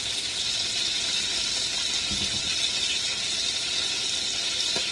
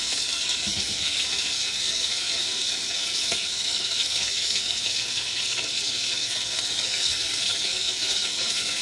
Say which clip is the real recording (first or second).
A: first